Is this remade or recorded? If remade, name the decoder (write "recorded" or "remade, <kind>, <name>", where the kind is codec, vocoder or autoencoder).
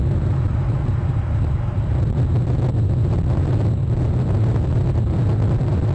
remade, vocoder, BigVGAN v2